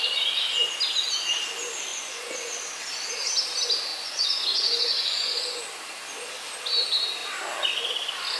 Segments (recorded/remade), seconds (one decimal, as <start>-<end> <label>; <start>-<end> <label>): 0.0-1.9 recorded; 1.9-2.6 remade; 2.6-3.9 recorded; 3.9-5.6 remade; 5.6-8.4 recorded